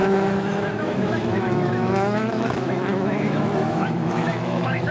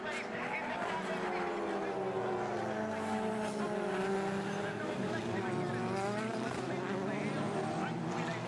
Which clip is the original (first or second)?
second